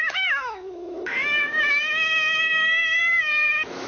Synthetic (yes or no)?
yes